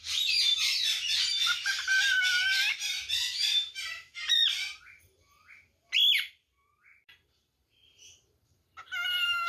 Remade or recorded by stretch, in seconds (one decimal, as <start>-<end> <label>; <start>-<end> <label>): 0.0-1.4 recorded; 1.4-4.8 remade; 4.8-6.9 recorded; 6.9-9.5 remade

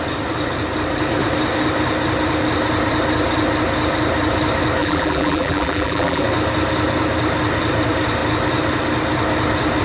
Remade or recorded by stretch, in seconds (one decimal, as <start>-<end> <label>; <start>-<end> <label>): 0.0-4.8 recorded; 4.8-6.2 remade; 6.2-9.8 recorded

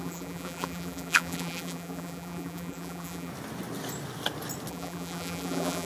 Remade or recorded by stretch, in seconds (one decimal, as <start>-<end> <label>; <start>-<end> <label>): 0.0-3.3 remade; 3.3-4.7 recorded; 4.7-5.9 remade

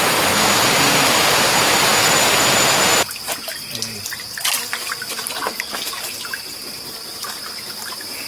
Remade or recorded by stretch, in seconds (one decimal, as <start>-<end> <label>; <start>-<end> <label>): 0.0-8.3 recorded

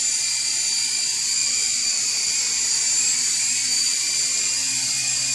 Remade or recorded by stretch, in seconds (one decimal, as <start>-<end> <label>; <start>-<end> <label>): 0.0-1.4 recorded; 1.4-2.3 remade; 2.3-3.6 recorded; 3.6-4.5 remade; 4.5-5.3 recorded

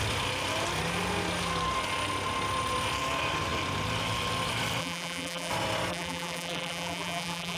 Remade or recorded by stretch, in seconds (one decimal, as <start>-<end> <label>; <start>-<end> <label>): 0.0-4.8 recorded; 4.8-5.5 remade; 5.5-5.9 recorded; 5.9-7.6 remade